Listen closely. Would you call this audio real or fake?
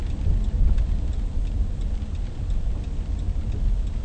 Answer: real